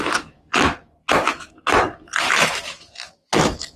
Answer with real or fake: fake